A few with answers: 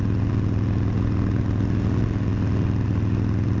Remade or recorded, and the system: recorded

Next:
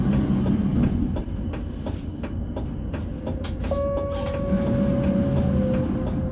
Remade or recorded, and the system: recorded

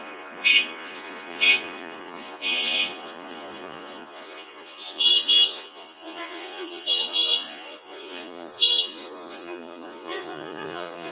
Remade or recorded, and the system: remade, vocoder, Vocos